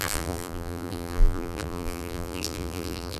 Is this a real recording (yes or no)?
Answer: no